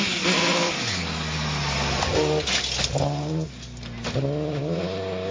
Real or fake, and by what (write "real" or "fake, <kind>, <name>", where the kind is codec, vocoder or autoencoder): real